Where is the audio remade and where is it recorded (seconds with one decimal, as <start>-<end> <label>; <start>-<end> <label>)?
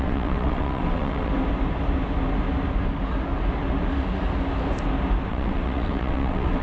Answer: 0.0-1.3 remade; 1.3-5.3 recorded; 5.3-6.6 remade